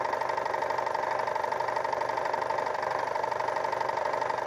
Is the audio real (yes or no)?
yes